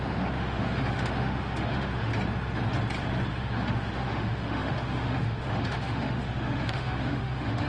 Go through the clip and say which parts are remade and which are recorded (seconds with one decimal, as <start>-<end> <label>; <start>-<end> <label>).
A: 0.0-2.1 remade; 2.1-3.3 recorded; 3.3-7.7 remade